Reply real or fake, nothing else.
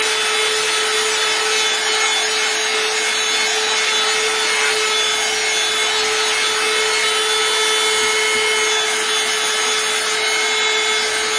real